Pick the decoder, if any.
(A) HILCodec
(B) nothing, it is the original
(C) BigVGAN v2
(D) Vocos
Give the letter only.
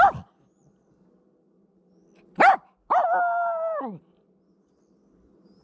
B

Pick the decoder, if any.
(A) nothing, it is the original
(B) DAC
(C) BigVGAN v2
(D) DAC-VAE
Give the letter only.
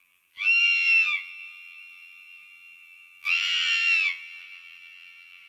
C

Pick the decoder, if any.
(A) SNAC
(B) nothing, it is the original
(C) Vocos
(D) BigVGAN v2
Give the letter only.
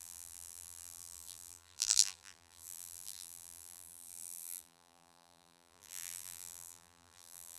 D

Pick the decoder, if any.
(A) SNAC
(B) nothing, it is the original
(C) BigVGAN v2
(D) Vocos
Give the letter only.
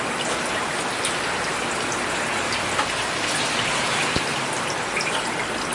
B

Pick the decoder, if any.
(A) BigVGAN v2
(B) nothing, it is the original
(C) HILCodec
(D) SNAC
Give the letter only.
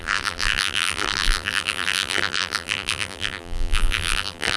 A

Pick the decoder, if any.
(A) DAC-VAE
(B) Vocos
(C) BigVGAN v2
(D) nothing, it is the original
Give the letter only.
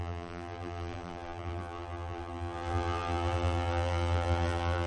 C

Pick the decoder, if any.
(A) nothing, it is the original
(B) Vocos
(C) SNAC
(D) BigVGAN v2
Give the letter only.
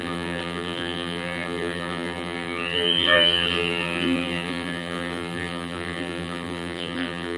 D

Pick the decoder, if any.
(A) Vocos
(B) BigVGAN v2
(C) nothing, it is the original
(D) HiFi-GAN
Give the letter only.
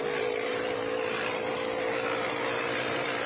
B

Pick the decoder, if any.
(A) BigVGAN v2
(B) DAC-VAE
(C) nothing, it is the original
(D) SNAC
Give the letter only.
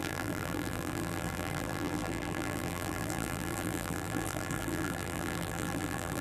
A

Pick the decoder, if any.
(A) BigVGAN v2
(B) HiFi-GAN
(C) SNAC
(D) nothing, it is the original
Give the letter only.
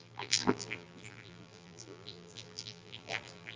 A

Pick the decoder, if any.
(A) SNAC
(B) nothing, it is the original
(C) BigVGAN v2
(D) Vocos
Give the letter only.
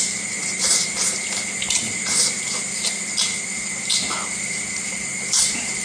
C